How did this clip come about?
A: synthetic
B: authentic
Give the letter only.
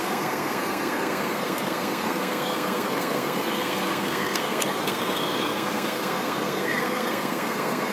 A